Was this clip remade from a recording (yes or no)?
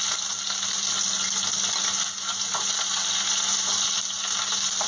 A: no